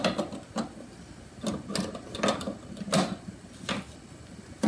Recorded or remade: recorded